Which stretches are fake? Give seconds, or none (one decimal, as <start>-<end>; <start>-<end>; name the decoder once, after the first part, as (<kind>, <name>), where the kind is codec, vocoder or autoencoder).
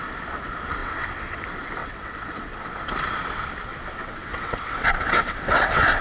0.8-1.4 (vocoder, WaveNeXt); 1.8-2.9; 3.7-6.0